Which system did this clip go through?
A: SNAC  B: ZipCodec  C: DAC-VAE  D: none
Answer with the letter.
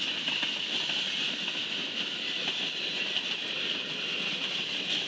D